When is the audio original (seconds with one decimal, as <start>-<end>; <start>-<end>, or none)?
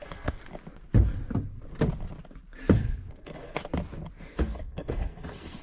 0.4-2.7; 3.6-4.3